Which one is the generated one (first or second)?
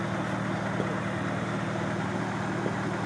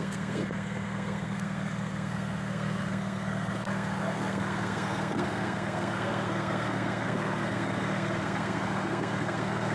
second